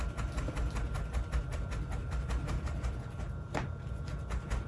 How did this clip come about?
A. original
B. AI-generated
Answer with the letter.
A